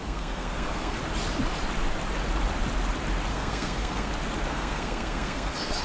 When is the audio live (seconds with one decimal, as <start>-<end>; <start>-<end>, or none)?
1.0-3.3; 4.1-4.5